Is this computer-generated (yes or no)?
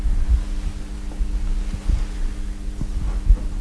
no